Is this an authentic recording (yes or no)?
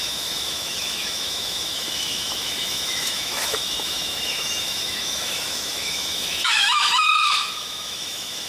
no